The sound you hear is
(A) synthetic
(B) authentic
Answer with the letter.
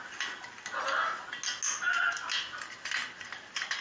B